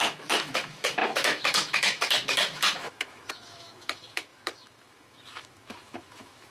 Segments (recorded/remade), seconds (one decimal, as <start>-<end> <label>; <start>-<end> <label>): 0.0-6.5 remade